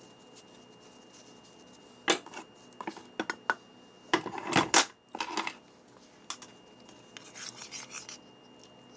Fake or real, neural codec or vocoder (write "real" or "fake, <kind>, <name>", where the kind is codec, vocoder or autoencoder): real